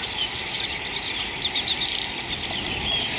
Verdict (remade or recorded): recorded